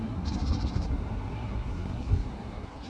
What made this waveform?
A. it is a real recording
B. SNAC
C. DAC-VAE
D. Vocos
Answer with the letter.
B